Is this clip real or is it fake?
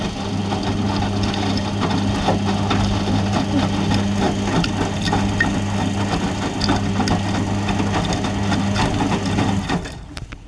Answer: real